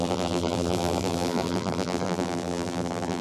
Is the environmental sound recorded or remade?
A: remade